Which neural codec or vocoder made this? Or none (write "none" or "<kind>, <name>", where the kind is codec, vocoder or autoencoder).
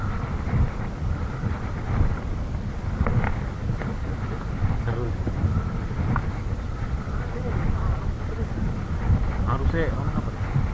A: none